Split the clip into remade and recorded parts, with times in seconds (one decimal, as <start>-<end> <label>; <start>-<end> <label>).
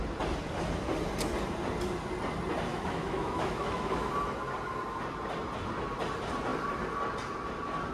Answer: 0.0-2.7 recorded; 2.7-4.1 remade; 4.1-7.9 recorded